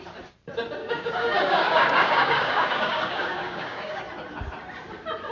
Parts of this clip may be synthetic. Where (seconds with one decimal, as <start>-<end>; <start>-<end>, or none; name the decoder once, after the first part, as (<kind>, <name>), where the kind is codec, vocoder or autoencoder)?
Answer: 0.8-4.0 (codec, DAC)